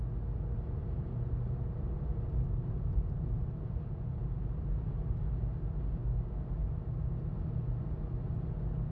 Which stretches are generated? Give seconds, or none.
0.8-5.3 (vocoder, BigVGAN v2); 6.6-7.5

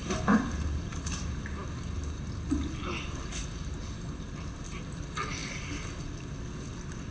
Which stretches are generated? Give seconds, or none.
none